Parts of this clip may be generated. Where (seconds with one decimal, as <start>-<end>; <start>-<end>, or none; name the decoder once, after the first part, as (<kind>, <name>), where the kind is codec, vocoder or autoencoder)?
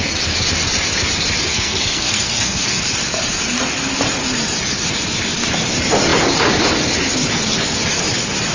1.5-2.8 (codec, SNAC)